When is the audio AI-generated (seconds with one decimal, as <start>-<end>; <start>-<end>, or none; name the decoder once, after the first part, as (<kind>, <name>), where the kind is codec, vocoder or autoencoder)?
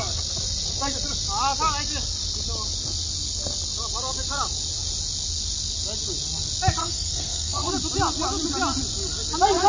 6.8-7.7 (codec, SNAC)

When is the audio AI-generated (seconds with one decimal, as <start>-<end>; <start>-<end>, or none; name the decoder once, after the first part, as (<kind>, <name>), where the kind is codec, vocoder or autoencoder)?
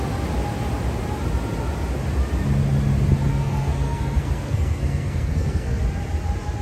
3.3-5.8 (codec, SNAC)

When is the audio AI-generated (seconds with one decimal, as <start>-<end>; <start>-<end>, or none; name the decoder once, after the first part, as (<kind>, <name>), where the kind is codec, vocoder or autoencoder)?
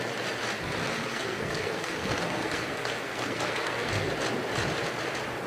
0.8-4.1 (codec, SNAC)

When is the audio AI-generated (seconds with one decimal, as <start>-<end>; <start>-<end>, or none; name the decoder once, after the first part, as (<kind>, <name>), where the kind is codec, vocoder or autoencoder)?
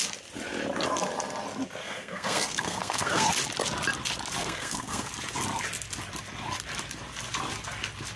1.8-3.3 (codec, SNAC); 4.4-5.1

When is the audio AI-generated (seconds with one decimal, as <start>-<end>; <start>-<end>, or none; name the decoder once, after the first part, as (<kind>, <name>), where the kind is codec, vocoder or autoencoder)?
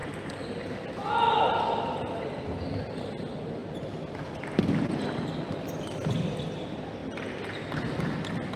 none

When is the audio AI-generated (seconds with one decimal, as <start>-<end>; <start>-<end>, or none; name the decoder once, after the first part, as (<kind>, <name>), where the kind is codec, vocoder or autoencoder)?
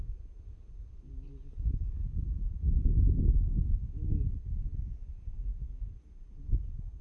none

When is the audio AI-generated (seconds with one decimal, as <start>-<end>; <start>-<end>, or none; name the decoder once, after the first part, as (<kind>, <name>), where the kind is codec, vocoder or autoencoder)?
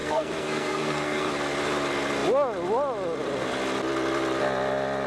0.0-1.3 (codec, SNAC)